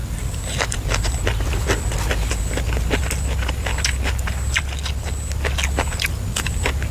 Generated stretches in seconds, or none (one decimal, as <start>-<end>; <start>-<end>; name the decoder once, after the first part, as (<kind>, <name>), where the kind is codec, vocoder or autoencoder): none